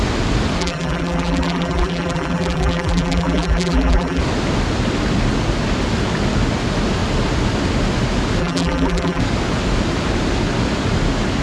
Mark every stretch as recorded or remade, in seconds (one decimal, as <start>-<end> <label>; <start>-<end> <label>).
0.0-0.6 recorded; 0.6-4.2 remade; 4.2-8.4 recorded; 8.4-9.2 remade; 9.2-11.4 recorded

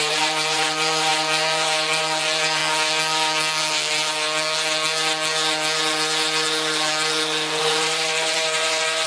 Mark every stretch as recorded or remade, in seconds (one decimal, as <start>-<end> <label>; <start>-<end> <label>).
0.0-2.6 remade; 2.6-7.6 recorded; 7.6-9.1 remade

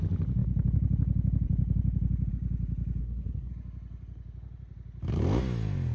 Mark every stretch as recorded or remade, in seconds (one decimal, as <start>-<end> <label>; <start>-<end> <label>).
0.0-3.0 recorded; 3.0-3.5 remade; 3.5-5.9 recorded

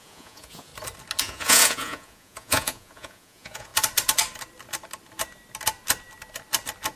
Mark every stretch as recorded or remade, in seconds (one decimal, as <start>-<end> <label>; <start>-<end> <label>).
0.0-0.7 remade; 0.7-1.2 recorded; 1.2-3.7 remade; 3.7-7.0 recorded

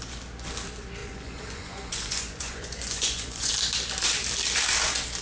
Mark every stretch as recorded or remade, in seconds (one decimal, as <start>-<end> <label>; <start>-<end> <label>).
0.0-1.0 recorded; 1.0-3.5 remade; 3.5-5.2 recorded

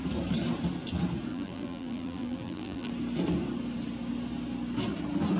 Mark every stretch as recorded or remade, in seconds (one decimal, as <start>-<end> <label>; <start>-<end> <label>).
0.0-1.3 recorded; 1.3-2.9 remade; 2.9-5.4 recorded